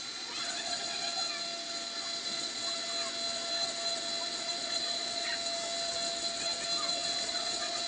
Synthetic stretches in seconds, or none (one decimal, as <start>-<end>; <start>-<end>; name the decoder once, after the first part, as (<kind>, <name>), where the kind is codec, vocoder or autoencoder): 0.0-1.1 (vocoder, Vocos); 2.2-2.6; 4.2-5.3; 6.9-7.9